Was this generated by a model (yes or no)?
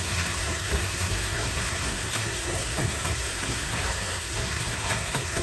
yes